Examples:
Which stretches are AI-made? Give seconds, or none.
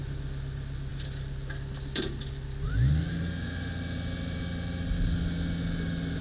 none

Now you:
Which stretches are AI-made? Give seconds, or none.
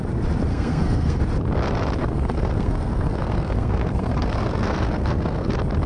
0.5-1.2 (codec, SNAC); 2.0-5.5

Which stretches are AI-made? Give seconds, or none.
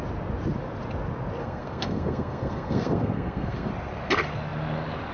1.4-3.7 (codec, SNAC)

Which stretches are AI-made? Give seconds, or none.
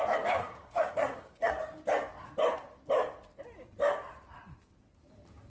0.4-1.5 (codec, SNAC)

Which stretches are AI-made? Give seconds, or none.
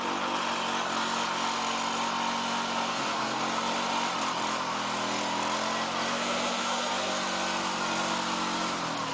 2.9-3.4 (codec, SNAC); 6.1-7.1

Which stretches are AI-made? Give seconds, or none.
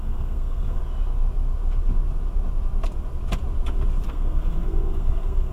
0.0-0.8 (codec, SNAC); 4.1-5.5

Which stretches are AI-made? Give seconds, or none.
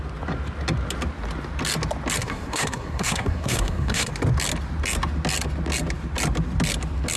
2.2-4.1 (codec, SNAC)